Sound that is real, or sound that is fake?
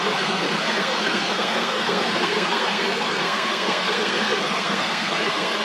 fake